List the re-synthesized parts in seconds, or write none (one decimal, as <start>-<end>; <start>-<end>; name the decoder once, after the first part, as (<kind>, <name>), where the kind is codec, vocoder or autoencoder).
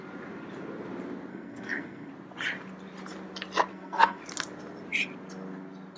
1.3-2.1 (codec, SNAC); 3.7-4.2